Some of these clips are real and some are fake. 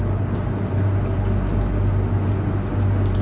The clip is real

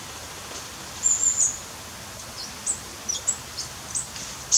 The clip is real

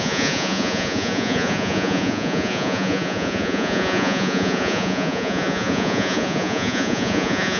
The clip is fake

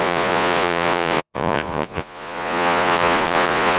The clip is fake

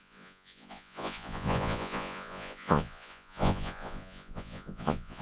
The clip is fake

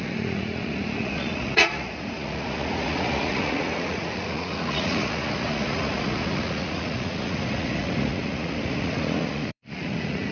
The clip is fake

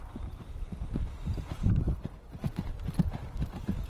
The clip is real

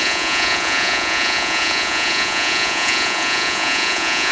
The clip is fake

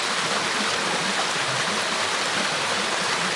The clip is real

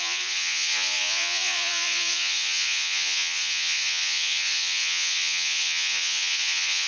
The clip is fake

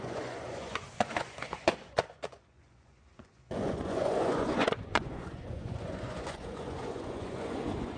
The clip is fake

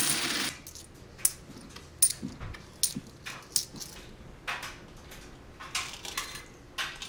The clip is real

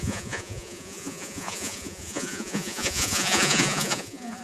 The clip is fake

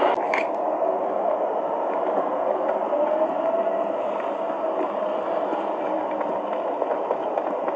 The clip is real